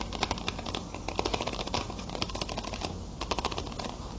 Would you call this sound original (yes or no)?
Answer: yes